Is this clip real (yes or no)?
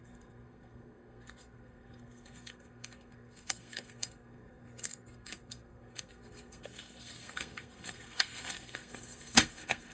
no